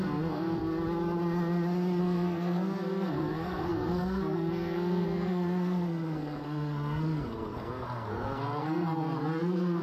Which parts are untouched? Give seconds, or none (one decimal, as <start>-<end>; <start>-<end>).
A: 0.6-2.0